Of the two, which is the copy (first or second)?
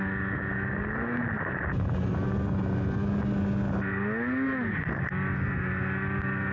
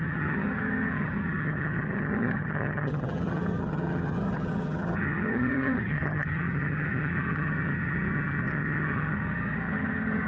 second